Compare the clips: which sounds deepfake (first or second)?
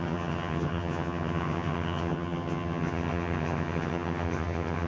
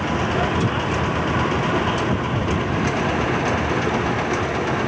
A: first